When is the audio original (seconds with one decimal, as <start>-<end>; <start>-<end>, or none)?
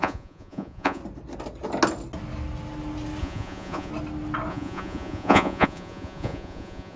1.0-3.2; 3.9-4.5